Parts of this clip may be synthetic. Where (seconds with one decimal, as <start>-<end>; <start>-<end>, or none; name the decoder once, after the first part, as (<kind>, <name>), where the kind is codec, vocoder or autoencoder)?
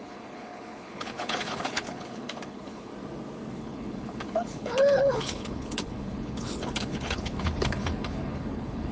0.0-2.9 (codec, HILCodec); 3.5-8.9